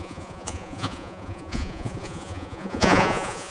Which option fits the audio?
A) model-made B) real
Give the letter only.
A